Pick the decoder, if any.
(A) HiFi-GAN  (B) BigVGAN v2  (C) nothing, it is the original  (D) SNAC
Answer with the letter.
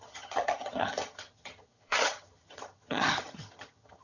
A